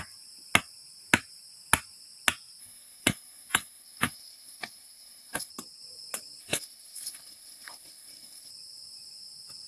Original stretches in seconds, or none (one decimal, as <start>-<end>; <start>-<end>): 0.0-2.6; 5.5-6.4; 8.5-9.7